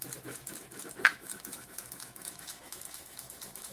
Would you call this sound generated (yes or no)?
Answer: yes